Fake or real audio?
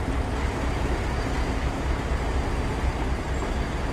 real